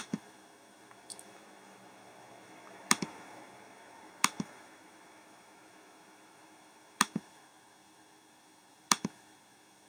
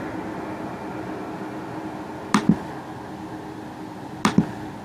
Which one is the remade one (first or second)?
first